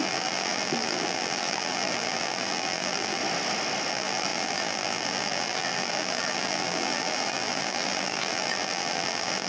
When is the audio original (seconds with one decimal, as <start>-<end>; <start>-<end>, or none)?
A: 3.2-3.9